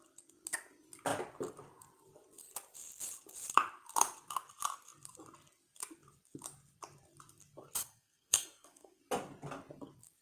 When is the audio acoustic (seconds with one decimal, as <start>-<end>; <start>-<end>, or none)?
0.0-7.8; 9.0-10.2